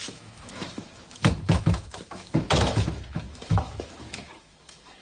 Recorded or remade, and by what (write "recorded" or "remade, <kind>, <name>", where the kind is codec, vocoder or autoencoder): remade, autoencoder, DAC-VAE